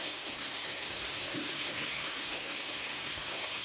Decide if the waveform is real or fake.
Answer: fake